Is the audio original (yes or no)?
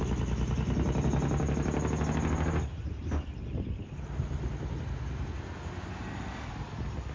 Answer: yes